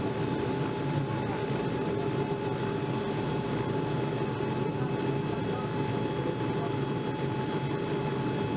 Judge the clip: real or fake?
real